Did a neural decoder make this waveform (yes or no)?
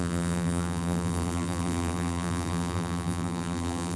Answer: yes